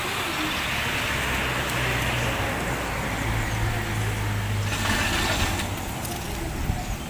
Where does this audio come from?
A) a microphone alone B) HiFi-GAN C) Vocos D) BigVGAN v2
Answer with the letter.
A